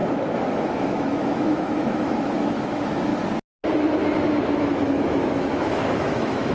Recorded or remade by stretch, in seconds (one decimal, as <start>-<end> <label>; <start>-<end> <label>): 0.0-3.1 remade; 3.1-4.3 recorded; 4.3-6.5 remade